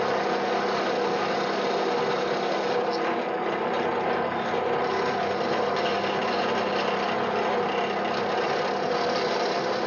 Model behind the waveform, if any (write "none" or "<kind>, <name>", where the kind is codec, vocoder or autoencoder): none